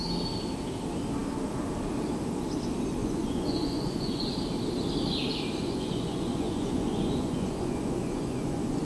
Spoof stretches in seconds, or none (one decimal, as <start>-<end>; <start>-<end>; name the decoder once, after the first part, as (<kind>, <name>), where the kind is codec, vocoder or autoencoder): 3.0-4.3 (vocoder, Vocos); 5.6-8.8